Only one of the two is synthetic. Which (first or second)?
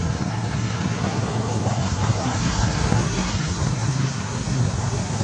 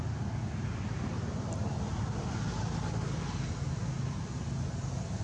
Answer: first